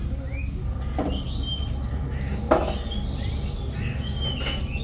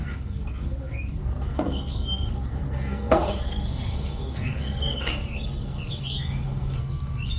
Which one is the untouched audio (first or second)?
first